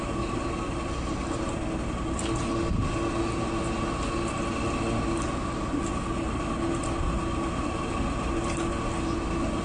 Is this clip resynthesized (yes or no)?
no